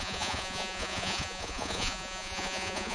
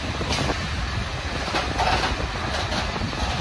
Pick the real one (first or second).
second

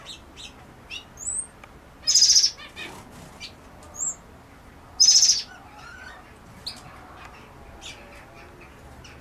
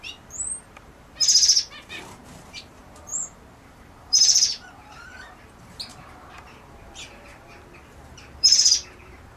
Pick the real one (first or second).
first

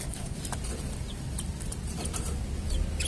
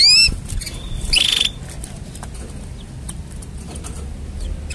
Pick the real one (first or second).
second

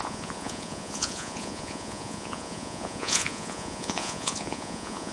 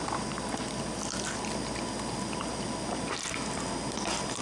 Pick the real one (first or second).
second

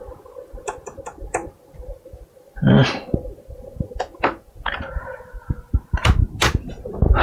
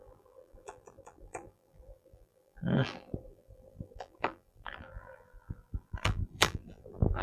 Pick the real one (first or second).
first